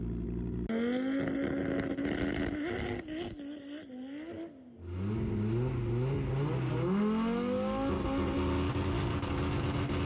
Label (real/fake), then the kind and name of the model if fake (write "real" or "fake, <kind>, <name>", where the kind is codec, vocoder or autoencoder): real